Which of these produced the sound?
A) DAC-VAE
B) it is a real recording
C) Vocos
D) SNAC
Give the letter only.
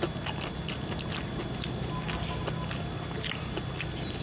B